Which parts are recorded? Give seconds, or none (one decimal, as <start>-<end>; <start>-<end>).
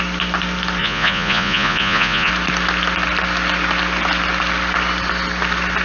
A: 0.0-0.8; 2.3-5.8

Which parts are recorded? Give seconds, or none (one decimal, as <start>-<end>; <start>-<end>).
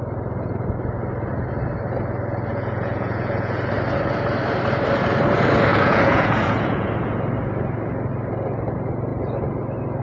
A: 0.0-2.5; 3.6-5.7; 6.9-10.0